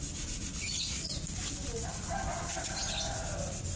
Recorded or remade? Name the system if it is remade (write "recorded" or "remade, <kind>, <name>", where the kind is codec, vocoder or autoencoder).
recorded